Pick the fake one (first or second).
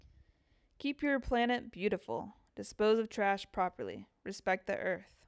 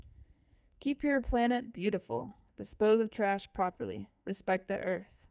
second